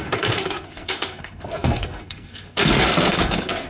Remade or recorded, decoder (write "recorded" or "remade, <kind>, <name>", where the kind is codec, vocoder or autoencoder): remade, codec, SNAC